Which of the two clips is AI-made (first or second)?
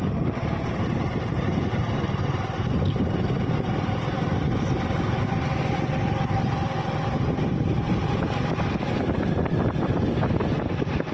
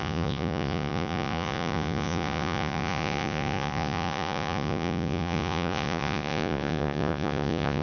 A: second